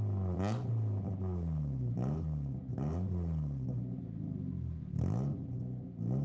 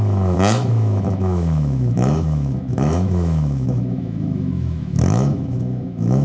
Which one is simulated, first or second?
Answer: second